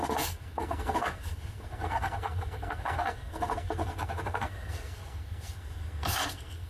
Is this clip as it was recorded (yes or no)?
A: no